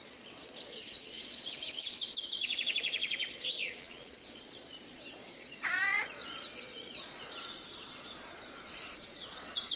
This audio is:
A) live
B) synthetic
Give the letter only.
B